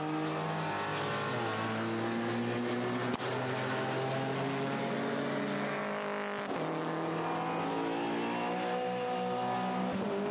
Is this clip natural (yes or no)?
yes